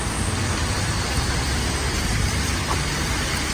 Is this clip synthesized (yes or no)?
no